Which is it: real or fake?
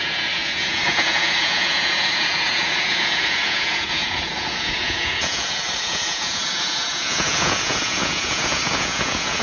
fake